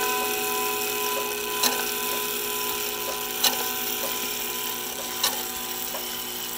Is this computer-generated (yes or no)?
no